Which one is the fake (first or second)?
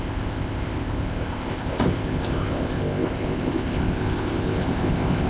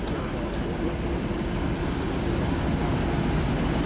first